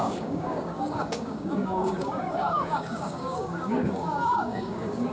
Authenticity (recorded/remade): remade